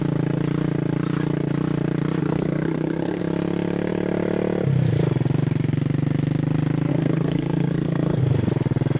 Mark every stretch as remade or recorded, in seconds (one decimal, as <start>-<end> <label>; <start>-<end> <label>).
0.0-2.2 recorded; 2.2-3.2 remade; 3.2-6.9 recorded; 6.9-8.2 remade; 8.2-9.0 recorded